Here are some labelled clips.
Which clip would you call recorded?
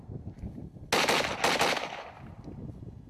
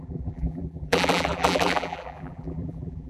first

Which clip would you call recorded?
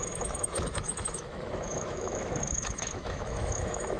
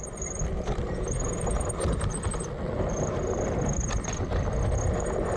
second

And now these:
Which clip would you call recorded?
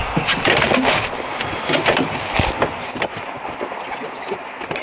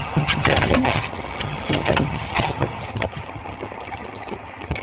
first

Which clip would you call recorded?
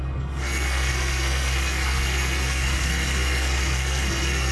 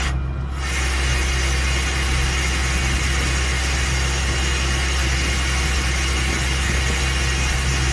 second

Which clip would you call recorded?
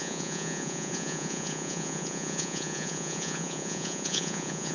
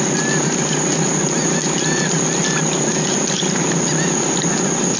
second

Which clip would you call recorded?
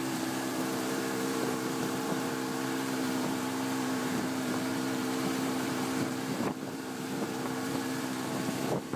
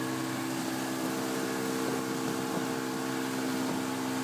second